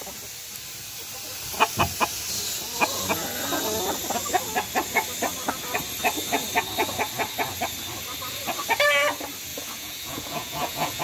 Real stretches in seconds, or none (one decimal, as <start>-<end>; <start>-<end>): 0.0-9.5